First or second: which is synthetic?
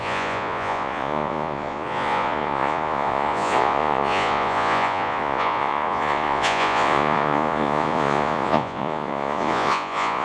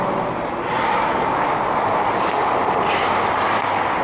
first